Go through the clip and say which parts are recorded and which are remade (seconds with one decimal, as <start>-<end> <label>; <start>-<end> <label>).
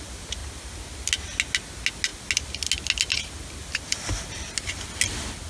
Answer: 0.0-5.5 recorded